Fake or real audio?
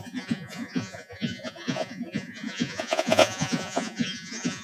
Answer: fake